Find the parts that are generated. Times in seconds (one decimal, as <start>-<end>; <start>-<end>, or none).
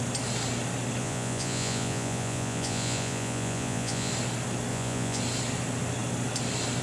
1.0-4.1; 4.7-5.2